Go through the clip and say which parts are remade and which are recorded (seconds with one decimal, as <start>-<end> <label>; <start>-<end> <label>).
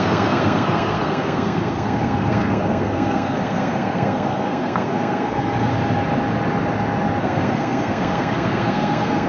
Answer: 0.0-5.7 remade; 5.7-7.2 recorded; 7.2-9.3 remade